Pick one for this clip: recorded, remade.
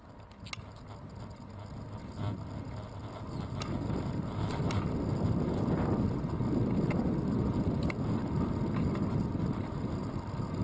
recorded